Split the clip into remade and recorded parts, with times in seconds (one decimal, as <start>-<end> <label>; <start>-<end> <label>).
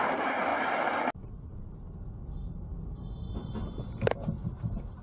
0.0-5.0 recorded